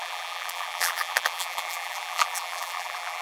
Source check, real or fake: fake